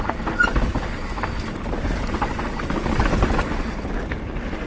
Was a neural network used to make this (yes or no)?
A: no